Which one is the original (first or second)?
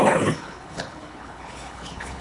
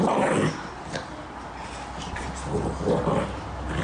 second